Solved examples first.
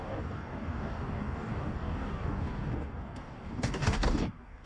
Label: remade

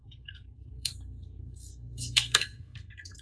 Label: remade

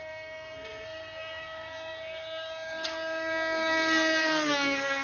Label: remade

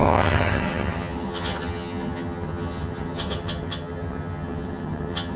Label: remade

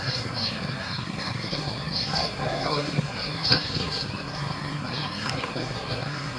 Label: remade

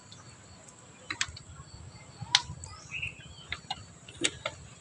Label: recorded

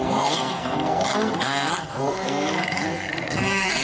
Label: remade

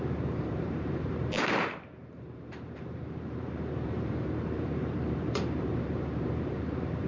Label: remade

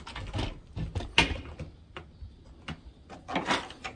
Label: recorded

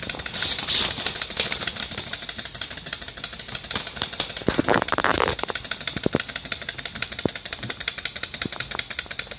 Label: recorded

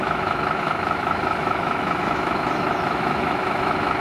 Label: remade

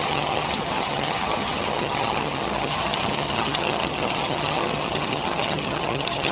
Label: remade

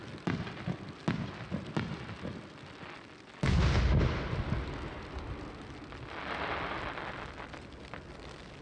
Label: recorded